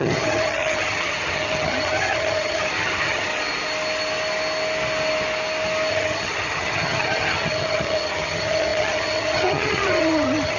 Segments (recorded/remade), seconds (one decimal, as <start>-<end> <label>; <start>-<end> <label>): 0.0-3.3 remade; 3.3-5.9 recorded; 5.9-10.6 remade